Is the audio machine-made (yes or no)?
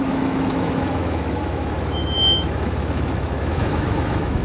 yes